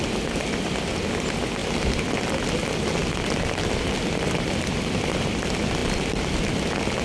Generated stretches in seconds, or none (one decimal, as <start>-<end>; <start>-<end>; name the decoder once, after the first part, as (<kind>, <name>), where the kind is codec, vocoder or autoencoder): none